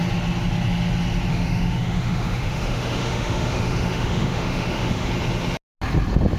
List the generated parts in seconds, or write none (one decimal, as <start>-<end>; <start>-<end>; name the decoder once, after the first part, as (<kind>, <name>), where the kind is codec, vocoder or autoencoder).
1.3-5.1 (autoencoder, DAC-VAE)